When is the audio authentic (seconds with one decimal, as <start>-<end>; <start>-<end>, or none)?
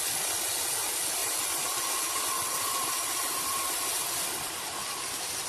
0.0-5.5